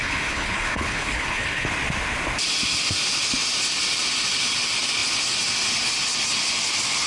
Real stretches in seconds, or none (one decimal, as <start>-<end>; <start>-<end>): 1.7-7.1